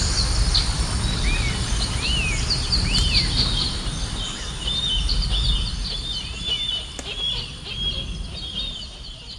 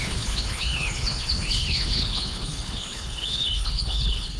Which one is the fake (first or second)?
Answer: second